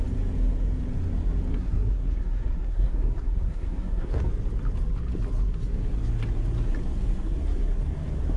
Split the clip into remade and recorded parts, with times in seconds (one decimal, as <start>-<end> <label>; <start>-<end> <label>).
0.0-1.5 recorded; 1.5-4.2 remade; 4.2-8.4 recorded